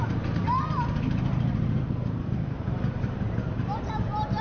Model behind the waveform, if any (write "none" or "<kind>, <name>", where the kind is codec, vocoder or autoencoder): vocoder, BigVGAN v2